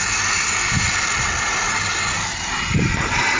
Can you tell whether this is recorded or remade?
recorded